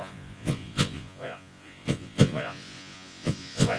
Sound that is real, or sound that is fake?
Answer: fake